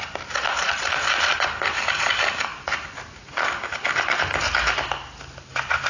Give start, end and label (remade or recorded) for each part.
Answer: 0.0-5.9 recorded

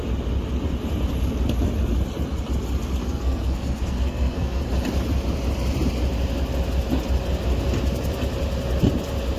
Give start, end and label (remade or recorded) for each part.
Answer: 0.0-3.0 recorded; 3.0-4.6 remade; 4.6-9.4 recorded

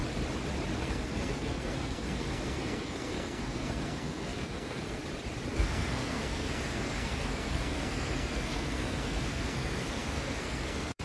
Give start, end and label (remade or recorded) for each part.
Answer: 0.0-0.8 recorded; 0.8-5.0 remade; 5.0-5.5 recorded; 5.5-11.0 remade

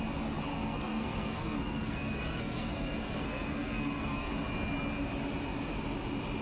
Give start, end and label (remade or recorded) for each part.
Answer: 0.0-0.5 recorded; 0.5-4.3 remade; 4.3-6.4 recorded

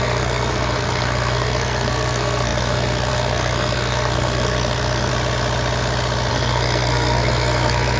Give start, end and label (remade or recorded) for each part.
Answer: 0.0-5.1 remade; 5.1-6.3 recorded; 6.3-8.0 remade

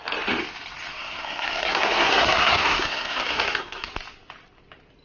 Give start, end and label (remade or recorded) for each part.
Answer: 0.0-0.9 recorded; 0.9-3.9 remade; 3.9-5.0 recorded